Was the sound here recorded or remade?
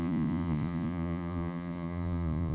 remade